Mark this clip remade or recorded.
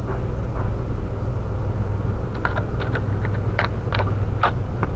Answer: recorded